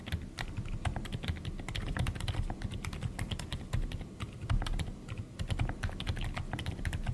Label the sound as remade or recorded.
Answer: recorded